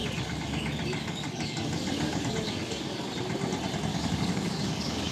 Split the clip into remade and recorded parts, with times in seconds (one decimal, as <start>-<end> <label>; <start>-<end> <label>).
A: 0.0-3.1 remade; 3.1-3.9 recorded; 3.9-5.1 remade